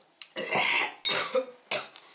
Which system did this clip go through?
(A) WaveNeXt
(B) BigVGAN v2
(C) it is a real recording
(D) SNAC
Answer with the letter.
C